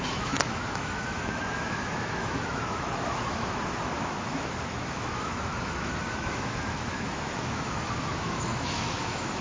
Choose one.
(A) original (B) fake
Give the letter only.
B